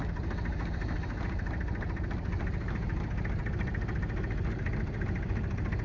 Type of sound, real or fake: fake